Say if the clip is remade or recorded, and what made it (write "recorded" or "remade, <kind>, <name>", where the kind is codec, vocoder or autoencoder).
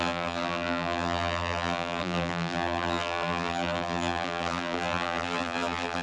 remade, vocoder, BigVGAN v2